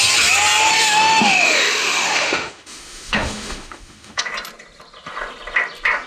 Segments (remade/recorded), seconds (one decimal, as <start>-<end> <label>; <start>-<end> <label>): 0.0-0.7 recorded; 0.7-4.2 remade; 4.2-6.1 recorded